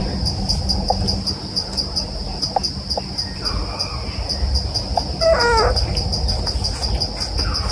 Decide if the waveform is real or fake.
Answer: real